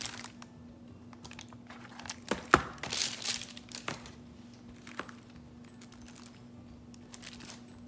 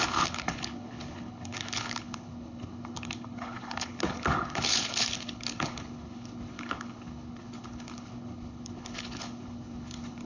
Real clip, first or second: first